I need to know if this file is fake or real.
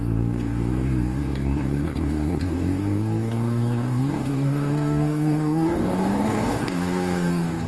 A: fake